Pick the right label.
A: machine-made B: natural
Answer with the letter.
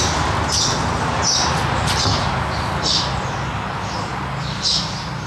B